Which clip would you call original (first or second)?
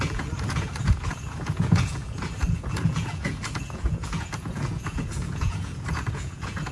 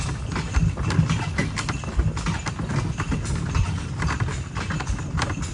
second